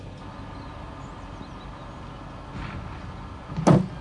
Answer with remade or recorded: recorded